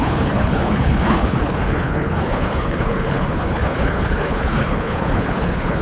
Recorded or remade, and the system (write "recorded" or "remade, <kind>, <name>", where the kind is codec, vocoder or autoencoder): remade, codec, HILCodec